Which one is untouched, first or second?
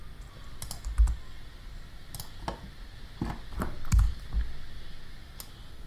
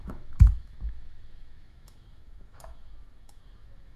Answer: first